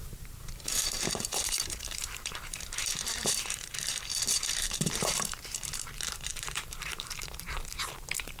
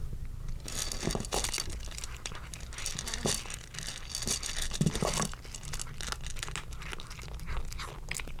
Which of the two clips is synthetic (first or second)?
first